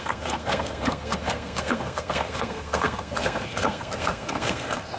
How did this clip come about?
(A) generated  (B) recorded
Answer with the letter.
A